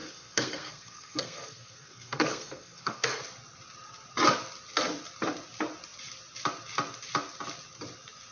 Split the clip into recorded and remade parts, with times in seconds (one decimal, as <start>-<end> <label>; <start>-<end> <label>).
0.0-3.2 remade; 3.2-8.3 recorded